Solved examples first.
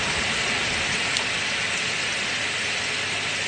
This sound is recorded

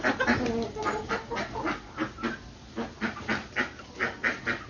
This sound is recorded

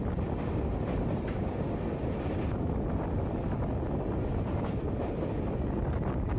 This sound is recorded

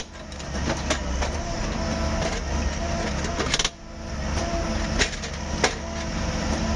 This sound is recorded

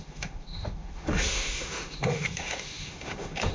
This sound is remade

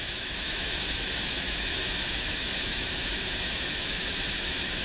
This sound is remade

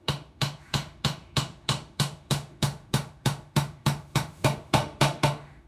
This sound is remade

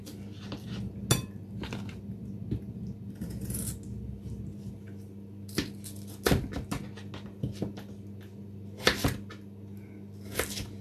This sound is recorded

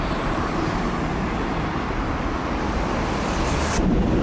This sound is recorded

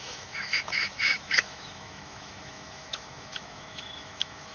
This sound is remade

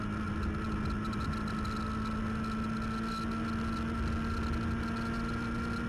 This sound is recorded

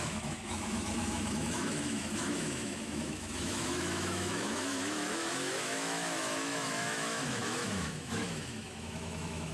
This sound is remade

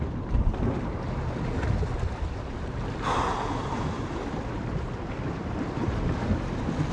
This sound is recorded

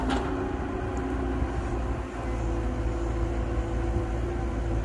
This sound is recorded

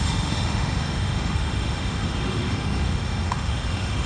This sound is remade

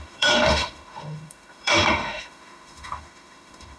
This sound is remade